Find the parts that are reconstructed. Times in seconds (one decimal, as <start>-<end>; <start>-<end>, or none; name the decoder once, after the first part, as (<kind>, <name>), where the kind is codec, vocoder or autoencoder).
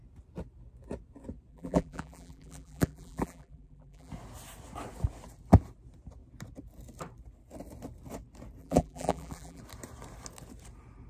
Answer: 1.5-4.1 (vocoder, BigVGAN v2); 8.6-9.6